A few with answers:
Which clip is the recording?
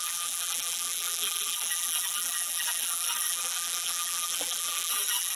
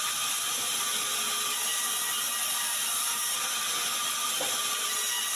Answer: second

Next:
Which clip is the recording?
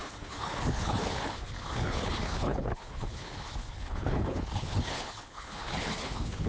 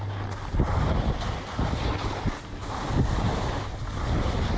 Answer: second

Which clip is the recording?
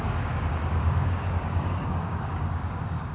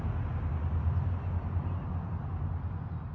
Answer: second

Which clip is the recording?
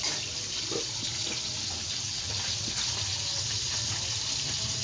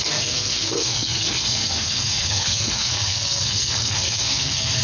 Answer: first